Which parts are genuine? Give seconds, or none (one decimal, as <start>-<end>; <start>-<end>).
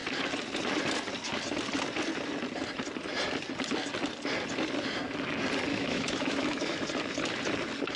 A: 0.0-5.7; 6.8-8.0